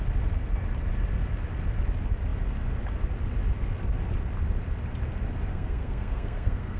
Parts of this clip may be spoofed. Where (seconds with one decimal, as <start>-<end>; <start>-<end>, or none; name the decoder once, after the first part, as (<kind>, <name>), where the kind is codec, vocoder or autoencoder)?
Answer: 5.5-6.8 (codec, SNAC)